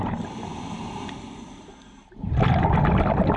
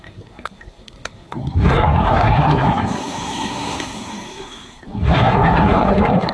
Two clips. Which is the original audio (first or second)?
first